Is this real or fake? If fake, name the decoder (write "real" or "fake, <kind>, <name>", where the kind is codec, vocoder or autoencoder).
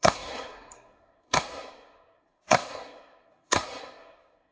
fake, codec, SNAC